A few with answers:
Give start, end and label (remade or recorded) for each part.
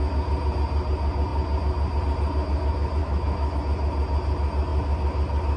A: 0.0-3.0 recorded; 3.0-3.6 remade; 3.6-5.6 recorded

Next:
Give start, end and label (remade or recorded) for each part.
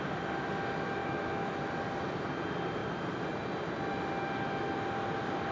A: 0.0-1.0 recorded; 1.0-1.7 remade; 1.7-5.5 recorded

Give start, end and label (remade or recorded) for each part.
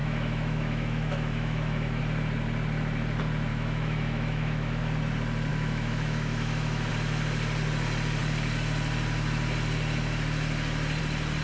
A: 0.0-2.0 remade; 2.0-3.5 recorded; 3.5-4.8 remade; 4.8-5.5 recorded; 5.5-6.9 remade; 6.9-11.4 recorded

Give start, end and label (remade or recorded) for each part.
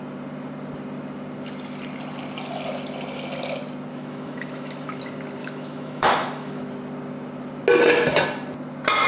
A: 0.0-3.9 recorded; 3.9-5.0 remade; 5.0-5.4 recorded; 5.4-6.6 remade; 6.6-9.1 recorded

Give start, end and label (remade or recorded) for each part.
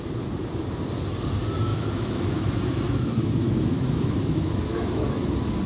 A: 0.0-1.7 recorded; 1.7-5.1 remade; 5.1-5.7 recorded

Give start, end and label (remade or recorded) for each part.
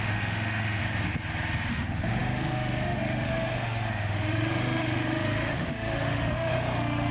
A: 0.0-0.8 remade; 0.8-1.7 recorded; 1.7-7.1 remade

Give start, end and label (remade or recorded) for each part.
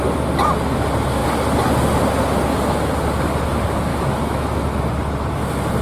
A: 0.0-3.9 recorded; 3.9-4.9 remade; 4.9-5.8 recorded